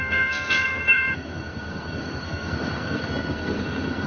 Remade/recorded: remade